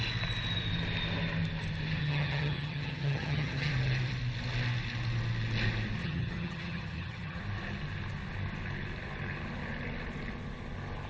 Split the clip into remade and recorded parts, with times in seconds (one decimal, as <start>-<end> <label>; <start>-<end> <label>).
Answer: 0.0-2.0 recorded; 2.0-3.7 remade; 3.7-6.0 recorded; 6.0-7.4 remade; 7.4-11.1 recorded